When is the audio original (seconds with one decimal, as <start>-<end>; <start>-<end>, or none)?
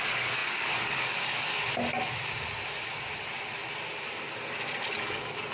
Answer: 1.6-4.9